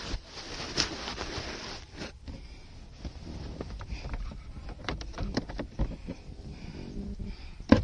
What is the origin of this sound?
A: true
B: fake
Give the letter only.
B